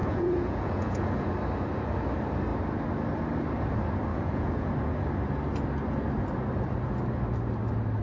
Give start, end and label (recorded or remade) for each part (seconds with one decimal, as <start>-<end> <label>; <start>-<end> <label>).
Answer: 0.0-1.3 remade; 1.3-4.1 recorded; 4.1-4.7 remade; 4.7-8.0 recorded